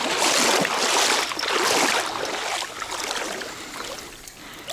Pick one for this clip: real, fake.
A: real